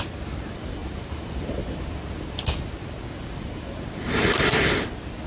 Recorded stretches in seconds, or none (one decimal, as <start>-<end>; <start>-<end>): 0.0-0.8; 1.9-5.3